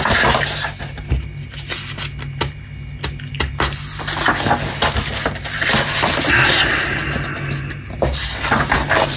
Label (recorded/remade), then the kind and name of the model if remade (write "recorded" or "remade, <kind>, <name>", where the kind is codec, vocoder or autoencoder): recorded